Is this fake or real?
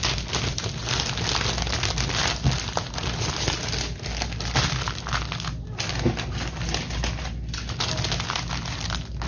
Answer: real